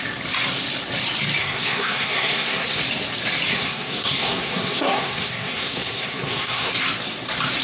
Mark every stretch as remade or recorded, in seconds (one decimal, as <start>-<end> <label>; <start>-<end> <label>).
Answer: 0.0-1.4 recorded; 1.4-2.8 remade; 2.8-3.5 recorded; 3.5-6.7 remade; 6.7-7.6 recorded